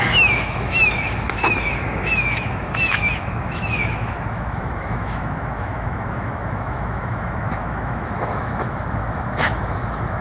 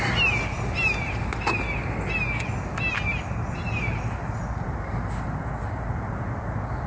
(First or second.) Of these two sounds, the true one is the second